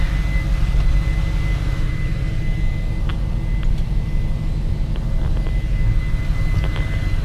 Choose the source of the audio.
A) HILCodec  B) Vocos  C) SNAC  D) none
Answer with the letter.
D